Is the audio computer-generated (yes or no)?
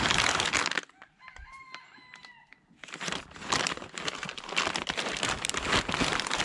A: no